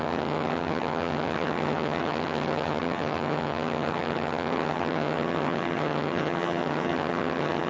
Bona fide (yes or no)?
no